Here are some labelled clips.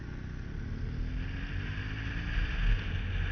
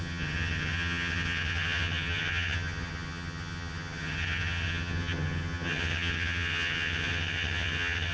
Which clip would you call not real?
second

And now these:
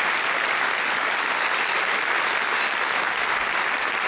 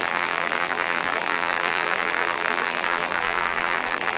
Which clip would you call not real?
second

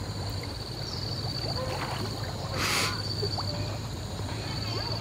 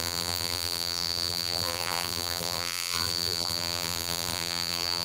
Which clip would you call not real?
second